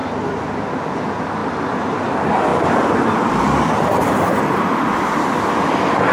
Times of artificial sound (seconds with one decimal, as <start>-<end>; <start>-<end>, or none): 1.4-2.0; 2.5-5.5